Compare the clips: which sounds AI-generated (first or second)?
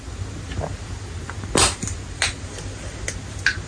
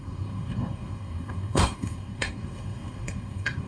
second